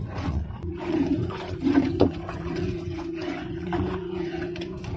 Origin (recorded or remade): remade